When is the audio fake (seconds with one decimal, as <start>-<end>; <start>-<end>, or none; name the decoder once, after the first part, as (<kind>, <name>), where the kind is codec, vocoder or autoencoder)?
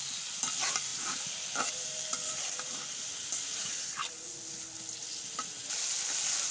none